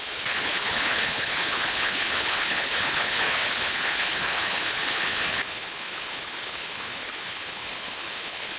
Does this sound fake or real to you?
fake